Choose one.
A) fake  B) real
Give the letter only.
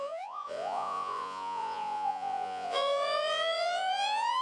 A